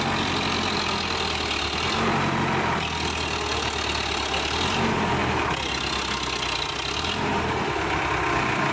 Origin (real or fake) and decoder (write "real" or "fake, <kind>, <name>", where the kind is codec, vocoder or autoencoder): real